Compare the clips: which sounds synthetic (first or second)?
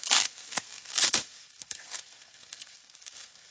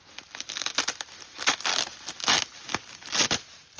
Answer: first